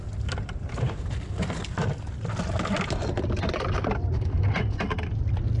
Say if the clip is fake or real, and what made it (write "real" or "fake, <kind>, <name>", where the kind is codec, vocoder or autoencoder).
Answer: real